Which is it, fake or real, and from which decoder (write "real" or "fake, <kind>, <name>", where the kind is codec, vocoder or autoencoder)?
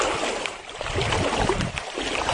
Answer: real